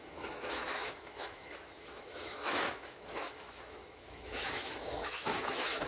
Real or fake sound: fake